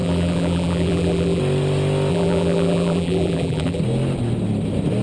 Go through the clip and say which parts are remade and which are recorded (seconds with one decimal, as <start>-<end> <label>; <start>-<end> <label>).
0.0-1.4 remade; 1.4-2.1 recorded; 2.1-3.8 remade; 3.8-5.0 recorded